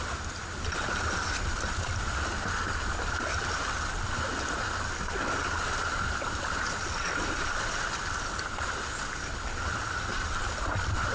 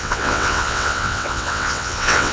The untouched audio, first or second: first